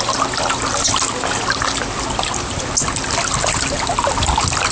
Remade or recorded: recorded